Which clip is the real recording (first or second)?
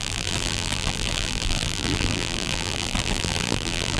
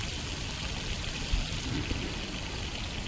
second